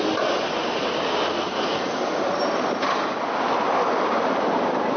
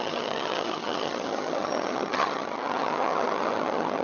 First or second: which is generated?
second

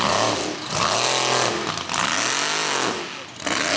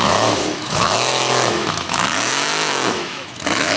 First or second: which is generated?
second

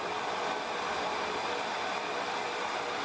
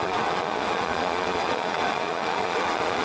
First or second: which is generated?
second